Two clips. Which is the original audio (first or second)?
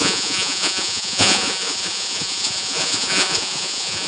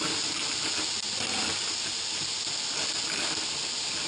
second